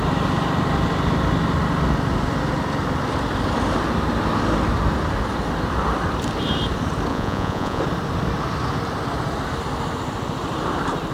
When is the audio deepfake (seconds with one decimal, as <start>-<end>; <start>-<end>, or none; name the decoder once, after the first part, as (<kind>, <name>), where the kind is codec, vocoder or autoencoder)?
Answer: 7.1-7.8 (vocoder, Vocos)